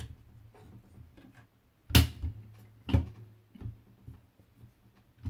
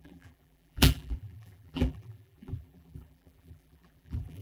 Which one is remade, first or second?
second